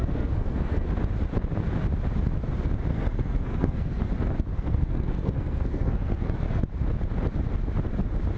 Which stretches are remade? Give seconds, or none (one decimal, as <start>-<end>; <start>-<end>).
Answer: 0.0-0.9; 2.9-4.0; 4.5-6.6